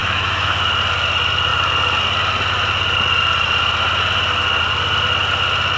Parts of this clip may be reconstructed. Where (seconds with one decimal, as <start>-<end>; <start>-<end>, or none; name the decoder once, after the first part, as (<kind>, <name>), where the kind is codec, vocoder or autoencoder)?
0.0-0.7 (autoencoder, DAC-VAE)